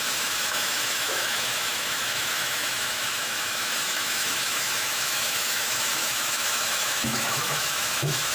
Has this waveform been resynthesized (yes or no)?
yes